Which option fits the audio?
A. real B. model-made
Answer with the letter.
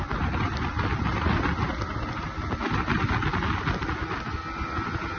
A